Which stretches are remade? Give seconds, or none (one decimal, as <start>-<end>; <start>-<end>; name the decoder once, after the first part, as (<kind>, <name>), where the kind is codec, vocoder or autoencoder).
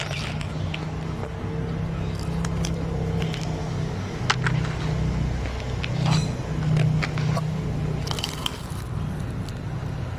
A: 3.6-4.2 (codec, DAC)